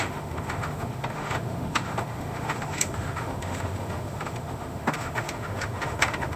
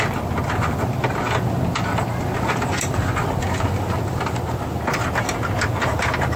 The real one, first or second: second